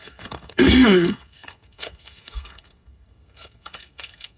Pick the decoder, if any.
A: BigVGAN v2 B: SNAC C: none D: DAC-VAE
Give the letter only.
B